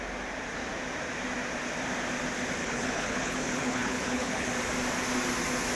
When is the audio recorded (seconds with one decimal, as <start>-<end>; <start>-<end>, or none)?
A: 0.0-2.6; 4.5-5.8